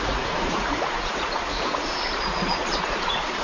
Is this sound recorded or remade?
remade